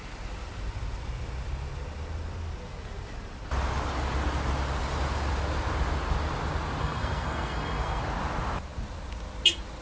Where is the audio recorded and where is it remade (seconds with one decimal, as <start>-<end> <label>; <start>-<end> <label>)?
0.0-6.8 recorded; 6.8-8.0 remade; 8.0-9.8 recorded